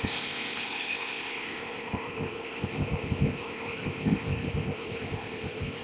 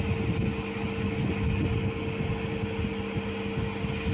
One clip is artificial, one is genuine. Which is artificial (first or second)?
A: first